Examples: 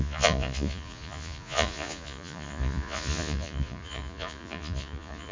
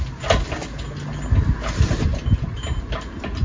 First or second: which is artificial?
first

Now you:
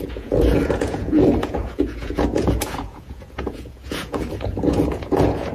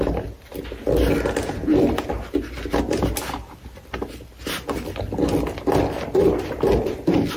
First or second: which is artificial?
first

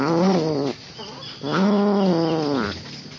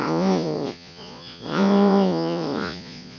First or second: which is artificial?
second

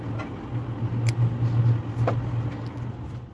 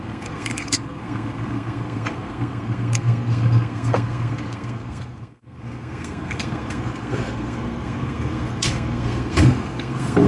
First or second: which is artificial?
second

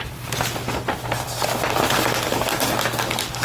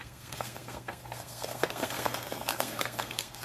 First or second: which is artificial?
second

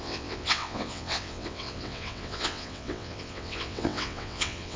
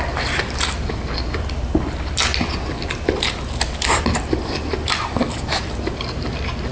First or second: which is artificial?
first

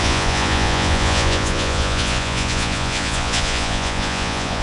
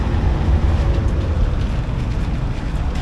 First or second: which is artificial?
first